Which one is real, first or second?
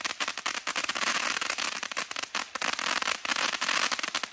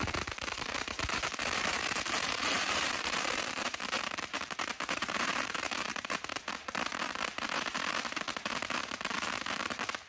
first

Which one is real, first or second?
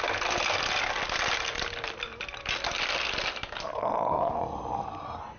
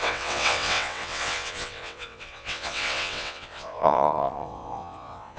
first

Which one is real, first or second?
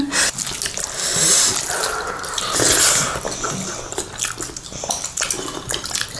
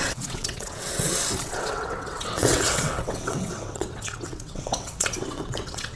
first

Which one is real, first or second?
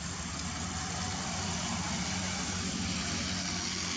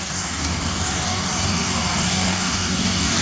first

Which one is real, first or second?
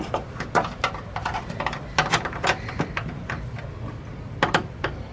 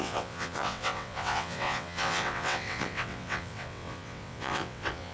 first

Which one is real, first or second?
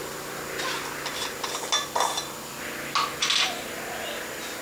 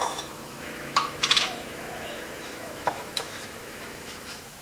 first